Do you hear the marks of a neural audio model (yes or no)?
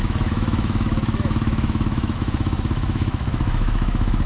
yes